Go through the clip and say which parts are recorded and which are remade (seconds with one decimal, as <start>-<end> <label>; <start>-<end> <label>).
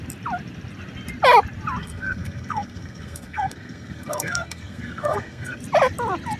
0.0-1.8 recorded; 1.8-5.6 remade; 5.6-6.4 recorded